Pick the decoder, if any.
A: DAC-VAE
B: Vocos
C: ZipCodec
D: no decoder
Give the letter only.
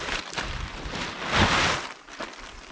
D